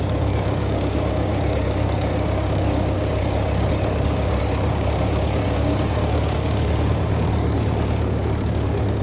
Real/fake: fake